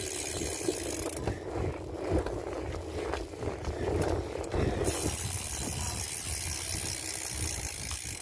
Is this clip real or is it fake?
real